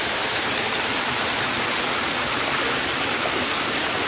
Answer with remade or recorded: recorded